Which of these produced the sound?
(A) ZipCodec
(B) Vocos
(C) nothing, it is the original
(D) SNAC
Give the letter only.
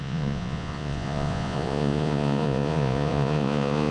B